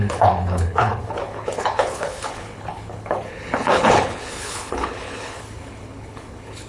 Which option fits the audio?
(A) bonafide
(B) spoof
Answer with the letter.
B